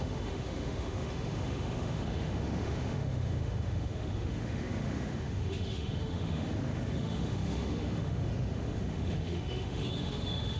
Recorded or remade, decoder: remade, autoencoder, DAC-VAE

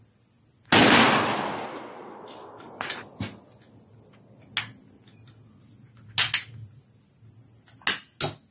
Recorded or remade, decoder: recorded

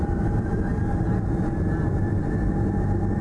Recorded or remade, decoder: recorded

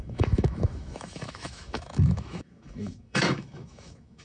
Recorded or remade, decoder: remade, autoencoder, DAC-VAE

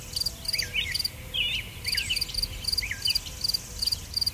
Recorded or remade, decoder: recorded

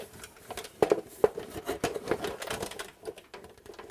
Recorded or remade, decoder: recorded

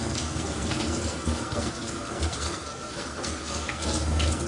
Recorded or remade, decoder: remade, codec, SNAC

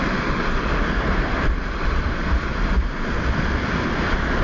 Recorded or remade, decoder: recorded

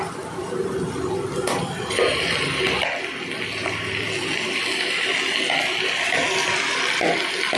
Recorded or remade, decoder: recorded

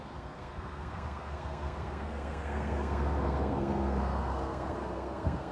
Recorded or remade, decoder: remade, codec, SNAC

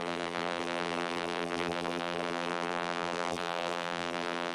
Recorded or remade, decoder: remade, vocoder, BigVGAN v2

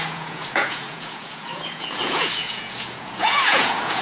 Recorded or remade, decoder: remade, vocoder, Vocos